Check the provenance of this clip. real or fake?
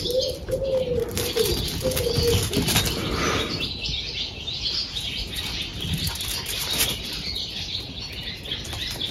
real